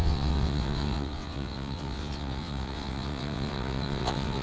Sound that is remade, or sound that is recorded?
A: remade